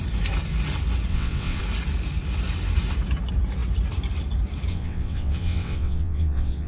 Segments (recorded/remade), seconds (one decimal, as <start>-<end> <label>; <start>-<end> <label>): 0.0-1.1 recorded; 1.1-1.6 remade; 1.6-4.7 recorded; 4.7-6.7 remade